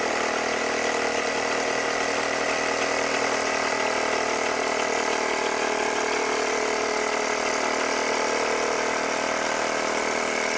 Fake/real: real